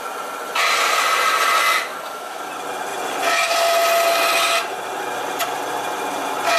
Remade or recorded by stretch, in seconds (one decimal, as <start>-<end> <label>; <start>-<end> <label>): 0.0-1.9 recorded; 1.9-2.5 remade; 2.5-6.6 recorded